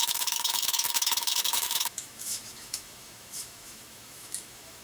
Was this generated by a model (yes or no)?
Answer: yes